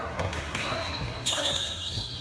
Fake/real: fake